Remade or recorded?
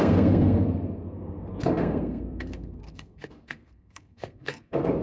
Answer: remade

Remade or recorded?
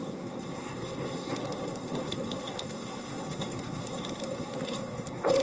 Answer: remade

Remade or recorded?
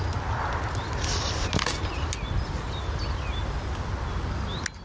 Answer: recorded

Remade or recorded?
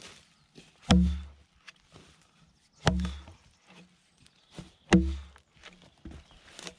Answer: recorded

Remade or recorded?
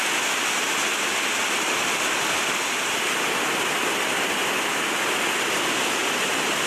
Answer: recorded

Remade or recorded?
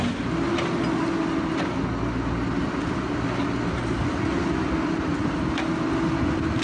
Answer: recorded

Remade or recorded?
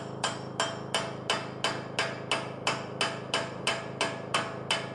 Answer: recorded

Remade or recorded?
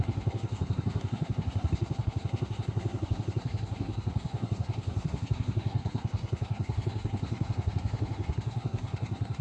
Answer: remade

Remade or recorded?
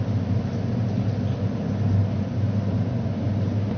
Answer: recorded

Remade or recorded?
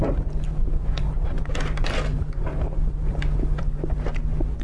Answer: recorded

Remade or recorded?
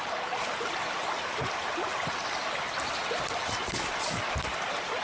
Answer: recorded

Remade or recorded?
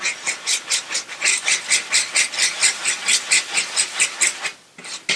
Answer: recorded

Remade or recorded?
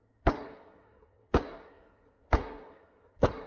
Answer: remade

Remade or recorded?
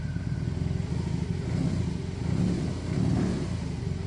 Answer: recorded